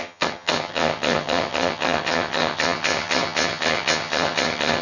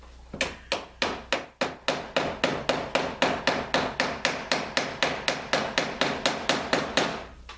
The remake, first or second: first